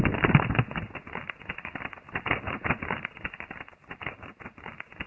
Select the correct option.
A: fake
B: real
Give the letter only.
B